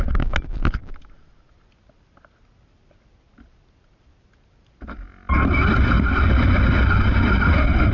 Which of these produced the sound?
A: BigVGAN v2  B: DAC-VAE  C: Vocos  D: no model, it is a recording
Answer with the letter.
D